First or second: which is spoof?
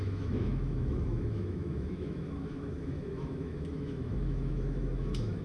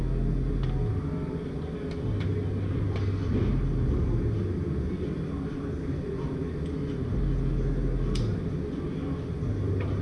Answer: first